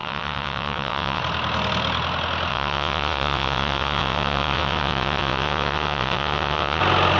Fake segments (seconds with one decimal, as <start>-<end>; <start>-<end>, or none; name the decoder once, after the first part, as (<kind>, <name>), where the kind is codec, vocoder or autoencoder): 0.0-1.2 (vocoder, WaveNeXt); 2.5-6.8